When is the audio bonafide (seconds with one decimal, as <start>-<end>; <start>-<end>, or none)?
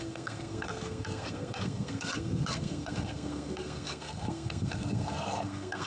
none